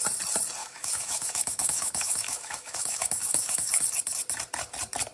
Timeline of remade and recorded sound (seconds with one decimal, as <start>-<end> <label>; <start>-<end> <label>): 0.0-0.6 recorded; 0.6-3.7 remade; 3.7-5.1 recorded